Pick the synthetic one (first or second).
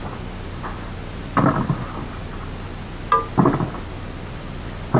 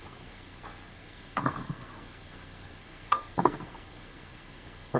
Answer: second